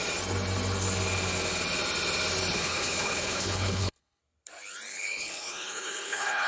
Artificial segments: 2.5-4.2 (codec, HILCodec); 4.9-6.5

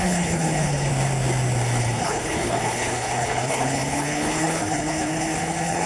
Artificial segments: 0.0-0.9 (codec, HILCodec); 1.8-5.9

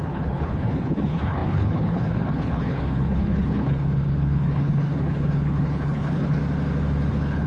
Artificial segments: 0.0-6.4 (codec, HILCodec); 7.1-7.5

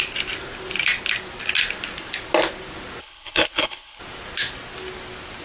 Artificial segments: 3.0-4.0 (codec, HILCodec)